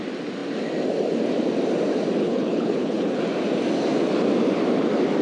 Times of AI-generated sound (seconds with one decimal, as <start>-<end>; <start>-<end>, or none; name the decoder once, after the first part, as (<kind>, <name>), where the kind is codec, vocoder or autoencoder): 2.2-3.2 (codec, HILCodec)